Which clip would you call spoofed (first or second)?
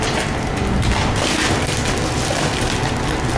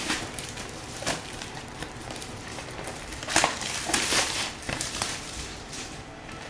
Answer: second